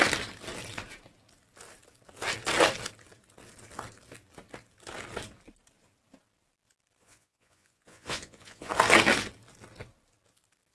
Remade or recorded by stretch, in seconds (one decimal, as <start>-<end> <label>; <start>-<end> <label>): 0.0-7.0 recorded; 7.0-8.7 remade; 8.7-10.7 recorded